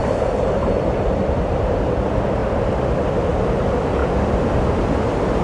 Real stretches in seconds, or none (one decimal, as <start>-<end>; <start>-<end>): 1.5-2.4; 3.5-5.4